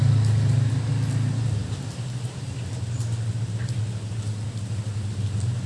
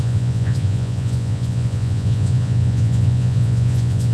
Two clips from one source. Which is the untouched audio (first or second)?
first